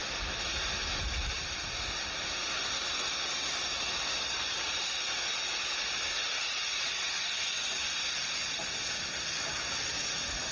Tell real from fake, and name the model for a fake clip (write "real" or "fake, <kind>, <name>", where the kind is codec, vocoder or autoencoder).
real